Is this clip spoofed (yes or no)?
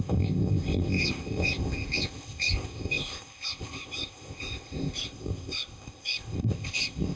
yes